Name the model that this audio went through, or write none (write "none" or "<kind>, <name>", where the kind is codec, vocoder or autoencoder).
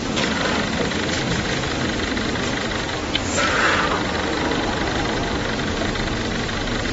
none